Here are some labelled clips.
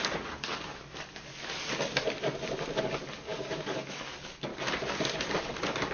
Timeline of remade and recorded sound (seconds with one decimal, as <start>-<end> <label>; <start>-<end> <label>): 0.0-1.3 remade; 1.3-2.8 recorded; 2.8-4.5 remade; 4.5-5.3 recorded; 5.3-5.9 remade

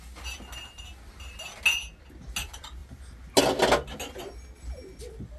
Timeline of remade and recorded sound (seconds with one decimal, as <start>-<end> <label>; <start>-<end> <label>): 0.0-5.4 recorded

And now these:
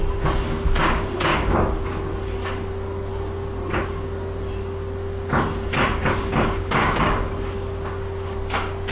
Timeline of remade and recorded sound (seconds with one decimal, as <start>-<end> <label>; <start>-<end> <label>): 0.0-0.8 recorded; 0.8-1.7 remade; 1.7-6.0 recorded; 6.0-7.3 remade; 7.3-8.9 recorded

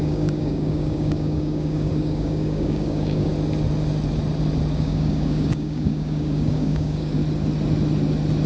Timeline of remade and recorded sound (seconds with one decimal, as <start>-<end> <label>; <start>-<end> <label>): 0.0-3.3 remade; 3.3-4.7 recorded; 4.7-7.2 remade; 7.2-8.5 recorded

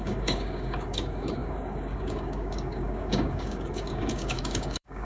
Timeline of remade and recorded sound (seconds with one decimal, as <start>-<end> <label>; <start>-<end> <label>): 0.0-5.0 remade

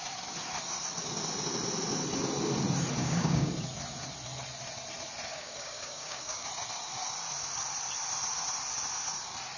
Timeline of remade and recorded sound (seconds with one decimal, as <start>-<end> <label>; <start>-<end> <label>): 0.0-3.0 recorded; 3.0-3.5 remade; 3.5-5.3 recorded; 5.3-6.5 remade; 6.5-9.6 recorded

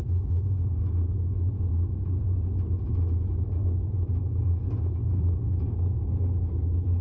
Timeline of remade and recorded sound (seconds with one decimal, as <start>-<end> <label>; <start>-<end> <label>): 0.0-4.2 recorded; 4.2-6.0 remade; 6.0-7.0 recorded

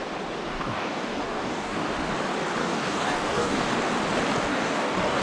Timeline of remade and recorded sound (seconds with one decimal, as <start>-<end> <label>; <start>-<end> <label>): 0.0-0.5 recorded; 0.5-1.9 remade; 1.9-2.6 recorded; 2.6-3.7 remade; 3.7-4.5 recorded; 4.5-5.2 remade